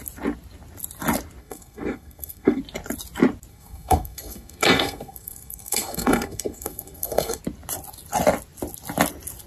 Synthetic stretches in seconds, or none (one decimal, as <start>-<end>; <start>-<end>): 1.4-2.6; 3.5-7.4